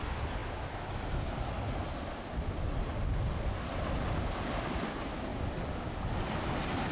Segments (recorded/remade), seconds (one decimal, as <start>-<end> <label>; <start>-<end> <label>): 0.0-6.9 recorded